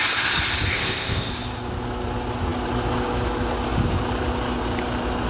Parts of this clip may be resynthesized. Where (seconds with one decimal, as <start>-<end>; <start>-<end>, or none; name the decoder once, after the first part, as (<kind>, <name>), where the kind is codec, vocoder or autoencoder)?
0.7-1.3 (codec, ZipCodec)